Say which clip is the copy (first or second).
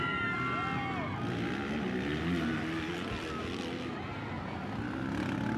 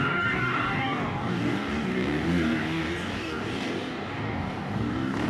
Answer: second